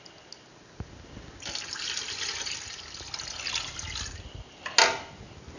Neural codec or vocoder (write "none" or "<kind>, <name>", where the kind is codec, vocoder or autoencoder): none